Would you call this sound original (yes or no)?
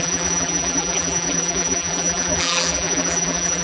no